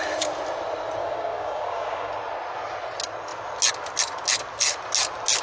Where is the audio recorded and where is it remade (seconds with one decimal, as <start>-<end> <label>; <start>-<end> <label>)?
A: 0.0-1.0 recorded; 1.0-2.1 remade; 2.1-5.4 recorded